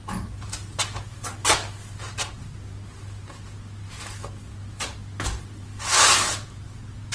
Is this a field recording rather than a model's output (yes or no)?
yes